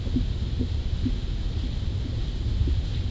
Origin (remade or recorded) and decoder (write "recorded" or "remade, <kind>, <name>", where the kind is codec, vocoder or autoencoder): recorded